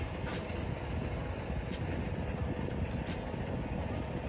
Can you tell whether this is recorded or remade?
recorded